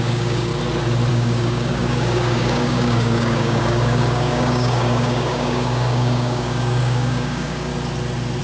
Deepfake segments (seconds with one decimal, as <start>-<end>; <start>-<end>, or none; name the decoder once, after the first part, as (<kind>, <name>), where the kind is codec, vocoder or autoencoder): 0.0-0.5 (codec, DAC); 1.1-7.7